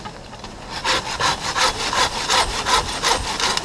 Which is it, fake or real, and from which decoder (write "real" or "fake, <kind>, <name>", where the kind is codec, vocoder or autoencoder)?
real